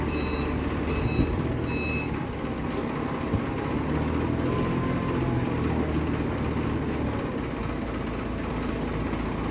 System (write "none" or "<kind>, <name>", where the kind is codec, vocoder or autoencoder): none